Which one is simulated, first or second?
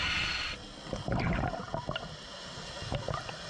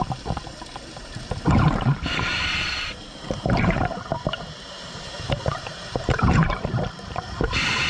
second